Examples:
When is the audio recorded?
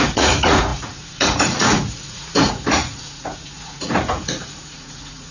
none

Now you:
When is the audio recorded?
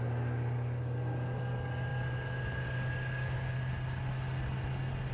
0.0-5.1